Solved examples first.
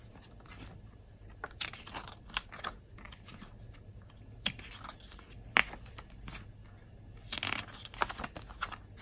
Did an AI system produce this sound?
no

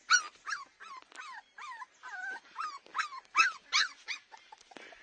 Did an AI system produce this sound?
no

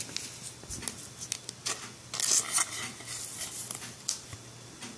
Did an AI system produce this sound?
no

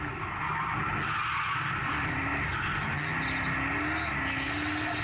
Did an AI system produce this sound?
no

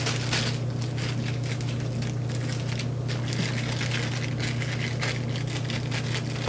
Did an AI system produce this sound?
no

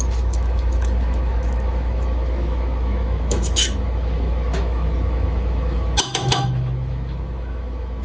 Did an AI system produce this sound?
yes